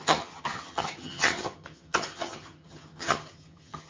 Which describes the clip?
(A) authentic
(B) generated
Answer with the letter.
B